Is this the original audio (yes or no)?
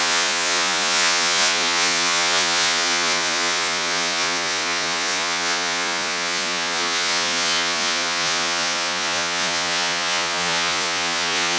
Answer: no